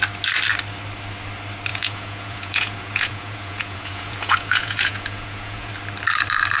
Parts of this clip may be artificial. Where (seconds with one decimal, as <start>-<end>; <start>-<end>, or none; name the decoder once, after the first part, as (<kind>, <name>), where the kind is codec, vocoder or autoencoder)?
1.7-5.7 (vocoder, Vocos)